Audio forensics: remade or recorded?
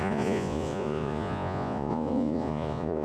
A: remade